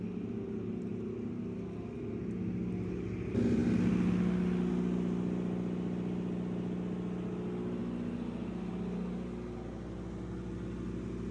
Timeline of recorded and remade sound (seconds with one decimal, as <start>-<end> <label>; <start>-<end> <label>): 0.0-11.3 recorded